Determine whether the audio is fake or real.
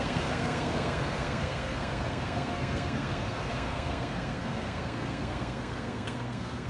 fake